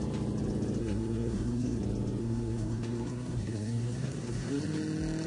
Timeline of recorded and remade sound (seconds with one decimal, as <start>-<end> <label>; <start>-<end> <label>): 0.0-0.8 recorded; 0.8-1.8 remade; 1.8-2.2 recorded; 2.2-4.6 remade; 4.6-5.3 recorded